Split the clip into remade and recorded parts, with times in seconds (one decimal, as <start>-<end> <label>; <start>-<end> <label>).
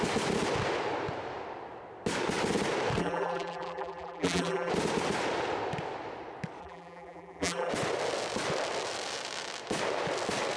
0.0-3.0 recorded; 3.0-4.7 remade; 4.7-6.6 recorded; 6.6-7.7 remade; 7.7-10.6 recorded